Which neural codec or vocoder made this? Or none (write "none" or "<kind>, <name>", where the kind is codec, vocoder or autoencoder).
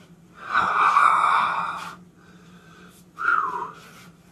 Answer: none